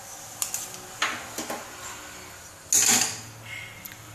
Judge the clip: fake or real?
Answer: real